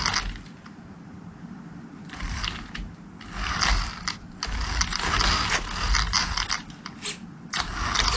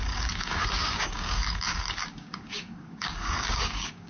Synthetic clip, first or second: second